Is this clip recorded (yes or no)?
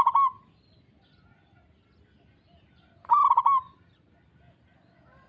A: yes